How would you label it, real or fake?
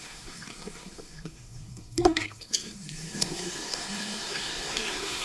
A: fake